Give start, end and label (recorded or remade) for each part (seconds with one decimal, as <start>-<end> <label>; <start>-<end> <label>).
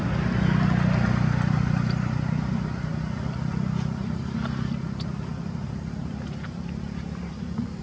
0.0-7.8 recorded